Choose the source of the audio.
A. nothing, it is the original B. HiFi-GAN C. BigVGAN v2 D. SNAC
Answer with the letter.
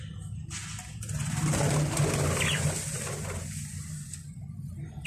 A